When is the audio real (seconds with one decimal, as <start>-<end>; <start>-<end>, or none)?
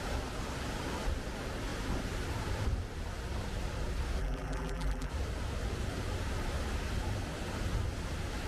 0.0-4.2; 5.1-8.5